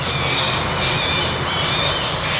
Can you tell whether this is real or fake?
real